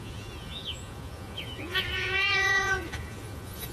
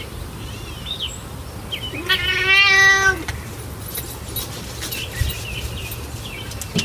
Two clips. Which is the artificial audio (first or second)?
first